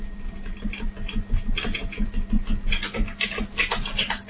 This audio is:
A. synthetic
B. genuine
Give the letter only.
B